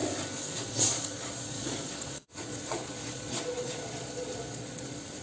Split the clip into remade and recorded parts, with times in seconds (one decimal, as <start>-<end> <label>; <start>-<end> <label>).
0.0-0.6 recorded; 0.6-5.2 remade